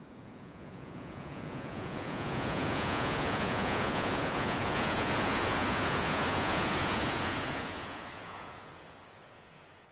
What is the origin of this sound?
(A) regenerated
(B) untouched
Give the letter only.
A